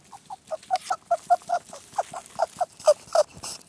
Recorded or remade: recorded